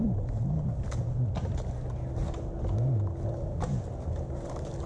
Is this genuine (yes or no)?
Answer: yes